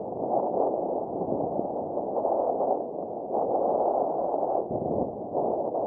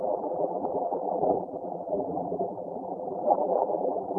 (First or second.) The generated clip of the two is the second